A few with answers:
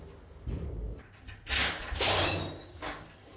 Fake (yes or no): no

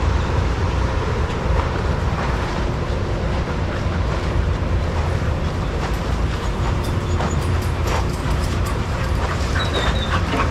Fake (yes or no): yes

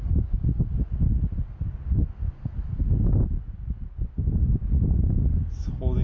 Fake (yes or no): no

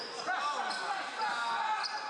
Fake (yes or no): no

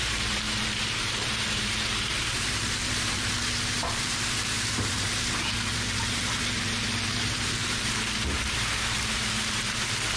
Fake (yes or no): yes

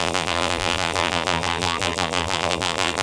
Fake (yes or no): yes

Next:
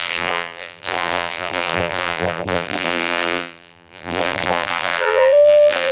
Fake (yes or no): yes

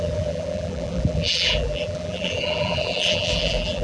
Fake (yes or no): yes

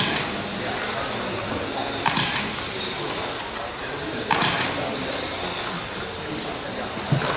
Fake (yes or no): no